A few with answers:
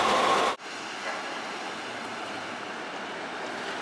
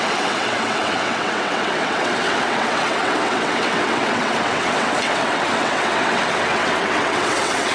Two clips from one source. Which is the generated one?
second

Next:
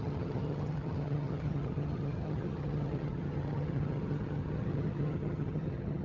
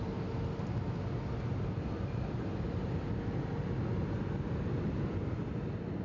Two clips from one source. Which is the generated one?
first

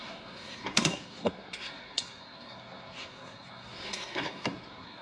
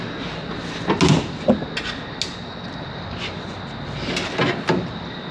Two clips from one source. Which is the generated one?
first